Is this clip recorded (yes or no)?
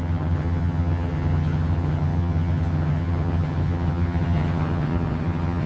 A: no